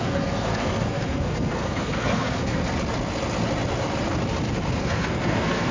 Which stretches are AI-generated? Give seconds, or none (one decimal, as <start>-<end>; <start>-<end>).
0.0-2.6; 4.8-5.7